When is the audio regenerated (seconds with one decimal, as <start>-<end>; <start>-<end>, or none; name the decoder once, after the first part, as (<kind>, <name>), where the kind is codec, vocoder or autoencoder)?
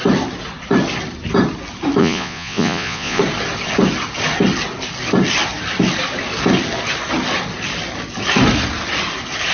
2.0-3.2 (vocoder, Vocos)